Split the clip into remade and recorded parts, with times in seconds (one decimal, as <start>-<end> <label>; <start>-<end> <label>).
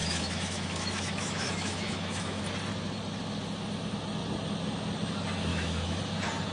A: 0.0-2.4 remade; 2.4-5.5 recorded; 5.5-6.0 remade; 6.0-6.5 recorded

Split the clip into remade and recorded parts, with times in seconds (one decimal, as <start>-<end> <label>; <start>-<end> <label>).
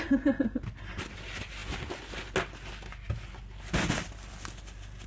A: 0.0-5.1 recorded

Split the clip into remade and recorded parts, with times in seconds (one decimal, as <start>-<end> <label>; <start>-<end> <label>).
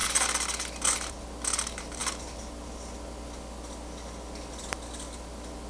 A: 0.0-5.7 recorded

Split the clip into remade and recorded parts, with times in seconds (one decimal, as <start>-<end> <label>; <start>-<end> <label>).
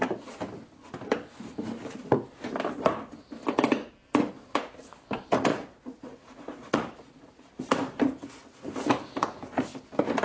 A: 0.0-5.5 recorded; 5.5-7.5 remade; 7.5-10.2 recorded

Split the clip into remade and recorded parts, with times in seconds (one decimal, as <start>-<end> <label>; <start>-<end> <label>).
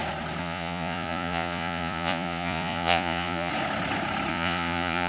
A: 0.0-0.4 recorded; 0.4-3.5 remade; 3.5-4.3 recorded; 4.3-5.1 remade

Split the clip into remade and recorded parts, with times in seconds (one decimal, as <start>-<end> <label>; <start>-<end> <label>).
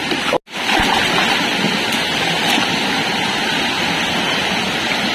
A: 0.0-5.1 recorded